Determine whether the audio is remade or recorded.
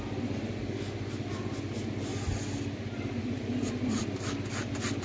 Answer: recorded